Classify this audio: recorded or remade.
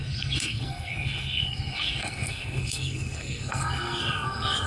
remade